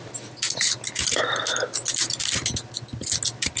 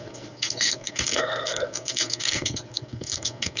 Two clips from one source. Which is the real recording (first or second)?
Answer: first